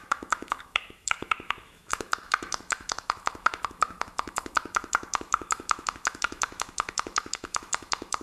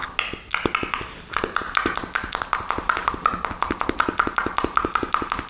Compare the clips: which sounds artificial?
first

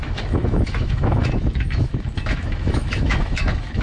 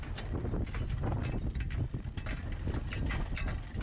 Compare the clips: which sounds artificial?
first